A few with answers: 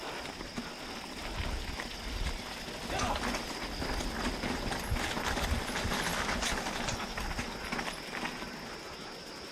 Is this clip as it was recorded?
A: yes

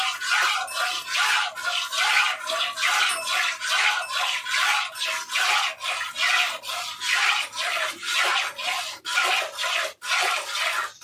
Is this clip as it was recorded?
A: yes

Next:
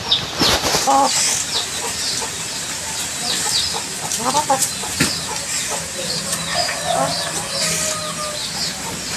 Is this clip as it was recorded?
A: yes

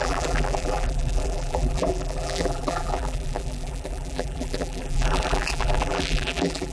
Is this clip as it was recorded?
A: no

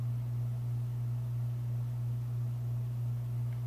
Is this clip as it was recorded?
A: yes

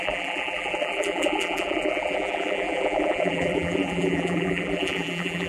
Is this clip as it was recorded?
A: no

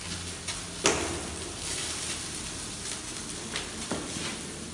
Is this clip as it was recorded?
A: yes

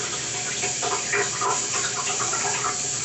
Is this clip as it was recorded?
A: no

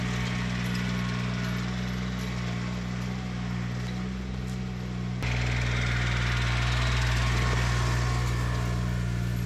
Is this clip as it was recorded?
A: yes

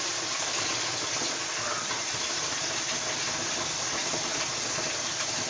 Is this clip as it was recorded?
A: yes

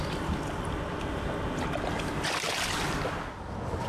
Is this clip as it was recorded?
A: yes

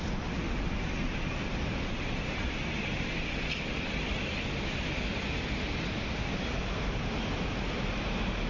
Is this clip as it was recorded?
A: yes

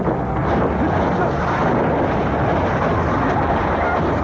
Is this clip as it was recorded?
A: yes